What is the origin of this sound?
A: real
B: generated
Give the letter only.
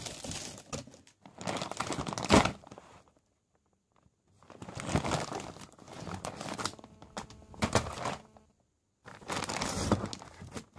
A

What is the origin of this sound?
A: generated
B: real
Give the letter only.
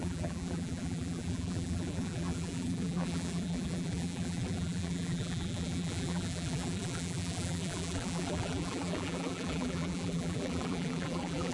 A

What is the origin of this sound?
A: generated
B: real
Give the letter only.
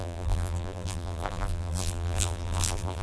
A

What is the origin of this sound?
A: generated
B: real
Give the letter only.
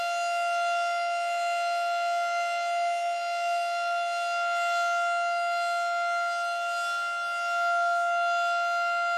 B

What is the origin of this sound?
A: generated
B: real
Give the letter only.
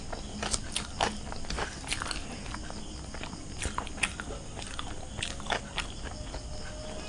B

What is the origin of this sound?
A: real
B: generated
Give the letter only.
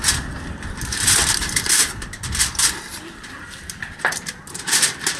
B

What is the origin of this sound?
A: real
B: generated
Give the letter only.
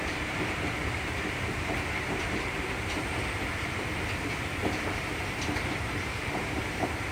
B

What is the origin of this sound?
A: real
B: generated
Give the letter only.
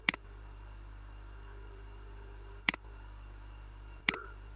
B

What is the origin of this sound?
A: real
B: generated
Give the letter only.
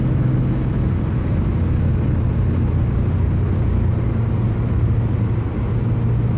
A